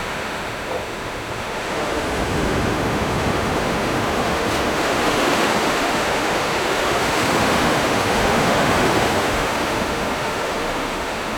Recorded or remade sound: remade